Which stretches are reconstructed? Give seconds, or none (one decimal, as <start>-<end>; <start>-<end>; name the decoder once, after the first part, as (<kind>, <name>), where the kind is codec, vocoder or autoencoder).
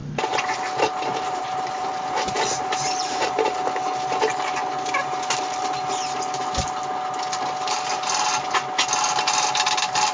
0.0-0.6 (vocoder, BigVGAN v2); 1.1-3.6